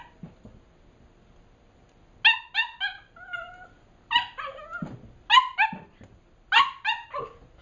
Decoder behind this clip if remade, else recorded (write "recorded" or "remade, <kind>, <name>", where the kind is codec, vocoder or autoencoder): recorded